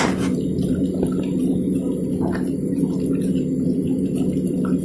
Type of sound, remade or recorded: recorded